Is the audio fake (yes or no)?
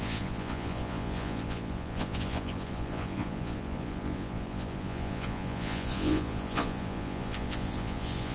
yes